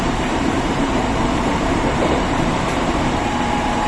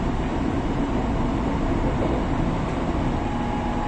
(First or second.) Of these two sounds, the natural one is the second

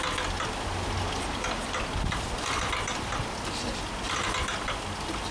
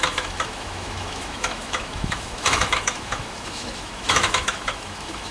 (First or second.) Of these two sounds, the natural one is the first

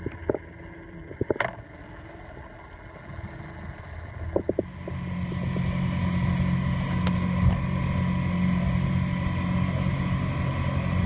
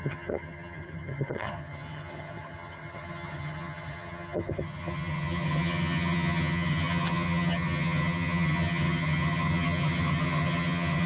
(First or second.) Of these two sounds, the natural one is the first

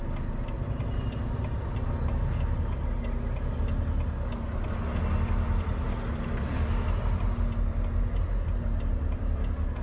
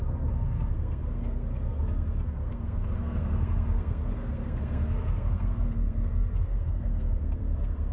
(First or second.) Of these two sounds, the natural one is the first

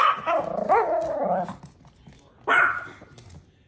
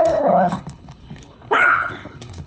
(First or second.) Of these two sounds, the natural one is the first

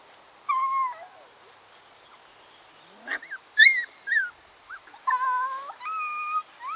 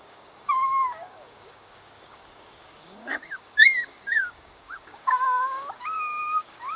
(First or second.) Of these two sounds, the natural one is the first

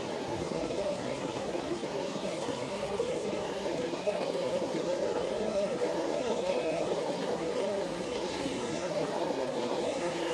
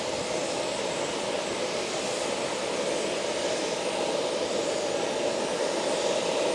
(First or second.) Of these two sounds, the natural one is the second